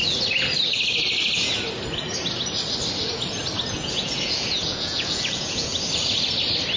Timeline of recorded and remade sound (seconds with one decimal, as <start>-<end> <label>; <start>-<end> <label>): 0.0-3.7 recorded; 3.7-5.7 remade; 5.7-6.8 recorded